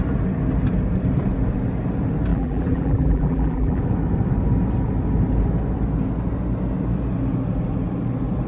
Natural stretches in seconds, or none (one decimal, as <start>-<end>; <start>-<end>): 0.0-2.3; 3.8-8.5